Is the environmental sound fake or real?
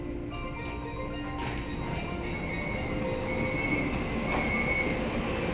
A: real